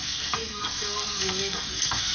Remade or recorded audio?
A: remade